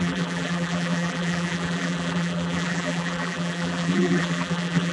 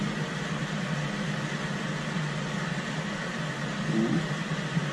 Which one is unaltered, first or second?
second